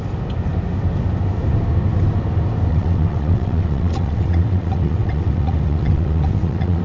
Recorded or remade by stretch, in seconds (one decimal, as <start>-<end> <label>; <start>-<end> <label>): 0.0-2.7 recorded; 2.7-6.8 remade